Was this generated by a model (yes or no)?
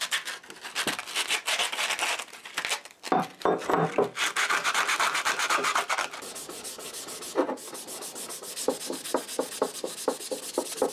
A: no